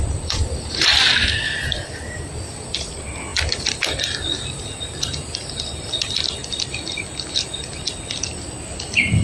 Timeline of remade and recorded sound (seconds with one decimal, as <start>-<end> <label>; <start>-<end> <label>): 0.0-9.2 remade